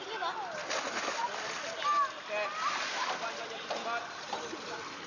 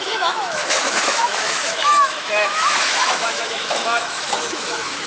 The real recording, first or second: first